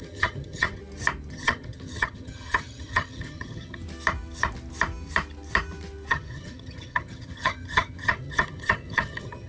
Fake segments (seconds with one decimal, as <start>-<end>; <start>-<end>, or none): 0.0-0.8; 1.3-3.8; 6.1-9.5